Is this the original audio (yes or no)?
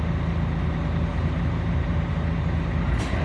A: yes